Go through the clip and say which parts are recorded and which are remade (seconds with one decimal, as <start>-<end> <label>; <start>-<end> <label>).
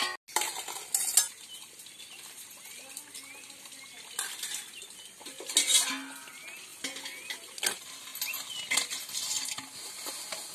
0.0-10.5 recorded